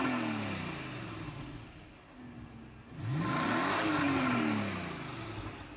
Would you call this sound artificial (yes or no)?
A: no